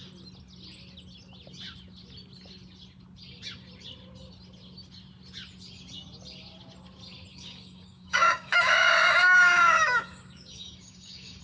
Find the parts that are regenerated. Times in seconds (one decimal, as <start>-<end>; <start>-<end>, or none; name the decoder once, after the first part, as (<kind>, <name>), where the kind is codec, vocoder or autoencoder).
7.3-11.4 (codec, DAC)